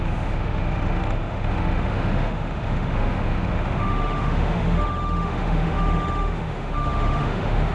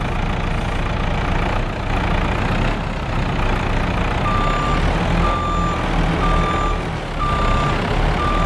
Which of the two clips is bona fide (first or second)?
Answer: second